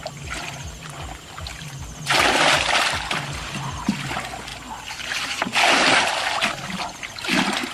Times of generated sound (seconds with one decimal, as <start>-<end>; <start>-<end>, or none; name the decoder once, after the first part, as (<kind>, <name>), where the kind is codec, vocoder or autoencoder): none